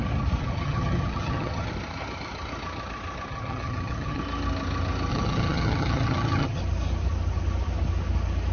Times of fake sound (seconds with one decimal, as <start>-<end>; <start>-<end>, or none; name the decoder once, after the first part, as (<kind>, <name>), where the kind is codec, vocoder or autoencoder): 0.4-1.7 (vocoder, HiFi-GAN); 3.3-4.2; 5.1-6.6